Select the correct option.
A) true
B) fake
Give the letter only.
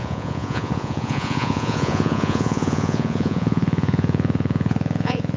B